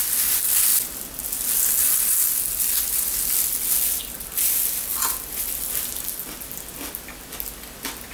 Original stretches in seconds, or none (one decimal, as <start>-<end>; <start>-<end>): 0.0-8.1